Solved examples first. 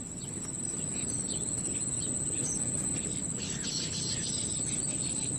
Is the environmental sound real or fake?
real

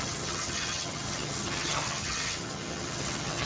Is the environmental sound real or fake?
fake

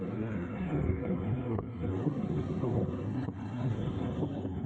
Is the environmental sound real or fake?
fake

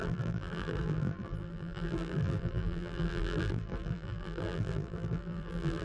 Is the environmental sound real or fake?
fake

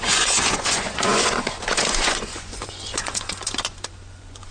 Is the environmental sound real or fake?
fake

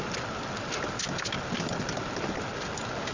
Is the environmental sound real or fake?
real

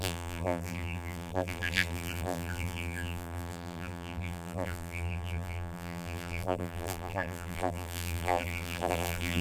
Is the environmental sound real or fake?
fake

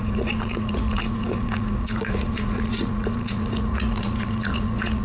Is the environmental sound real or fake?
fake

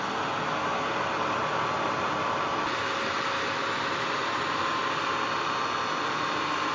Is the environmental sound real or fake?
real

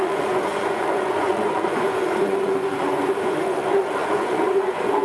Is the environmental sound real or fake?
fake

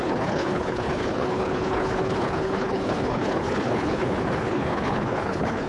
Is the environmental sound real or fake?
fake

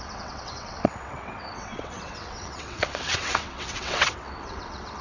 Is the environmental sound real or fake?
fake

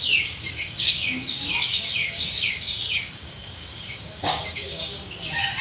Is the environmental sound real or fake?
fake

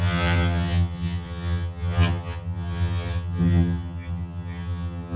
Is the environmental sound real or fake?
fake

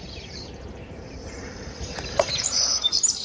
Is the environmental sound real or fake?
fake